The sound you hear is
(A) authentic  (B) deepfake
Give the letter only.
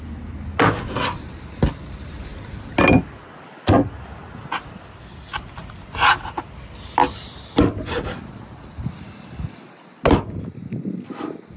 A